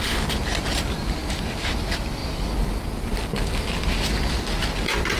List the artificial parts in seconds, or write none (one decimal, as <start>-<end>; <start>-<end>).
none